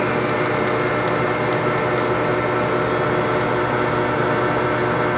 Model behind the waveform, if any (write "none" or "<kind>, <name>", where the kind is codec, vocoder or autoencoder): none